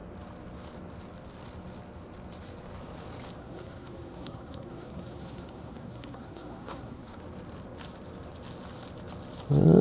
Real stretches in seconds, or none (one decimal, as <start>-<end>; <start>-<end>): 0.0-3.4; 7.2-9.8